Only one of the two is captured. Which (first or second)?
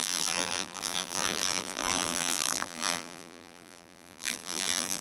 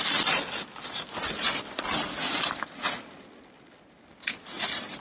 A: second